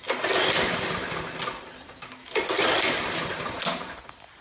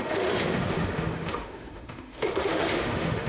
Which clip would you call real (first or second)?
first